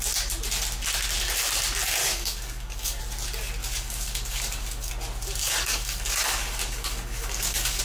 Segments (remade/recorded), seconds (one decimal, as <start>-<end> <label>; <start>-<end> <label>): 0.0-2.0 recorded; 2.0-3.0 remade; 3.0-3.6 recorded; 3.6-4.9 remade; 4.9-5.4 recorded; 5.4-7.8 remade